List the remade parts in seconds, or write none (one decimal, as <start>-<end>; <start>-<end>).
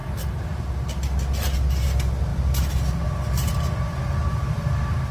0.0-0.6